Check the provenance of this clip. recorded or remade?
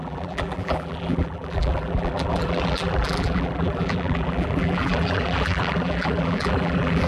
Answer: remade